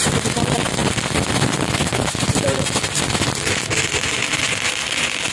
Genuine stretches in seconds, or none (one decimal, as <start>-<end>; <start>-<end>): 0.0-5.3